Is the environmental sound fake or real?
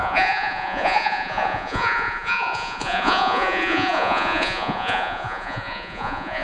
fake